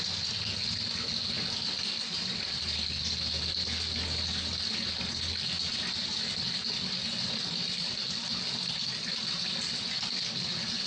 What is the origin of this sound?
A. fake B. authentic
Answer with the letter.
B